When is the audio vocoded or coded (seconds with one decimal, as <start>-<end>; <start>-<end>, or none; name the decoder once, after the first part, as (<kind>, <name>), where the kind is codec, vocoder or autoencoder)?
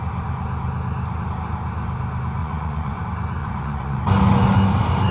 2.4-3.0 (vocoder, Vocos); 3.4-4.0